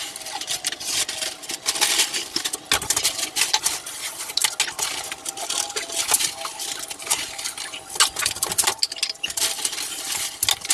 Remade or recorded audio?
recorded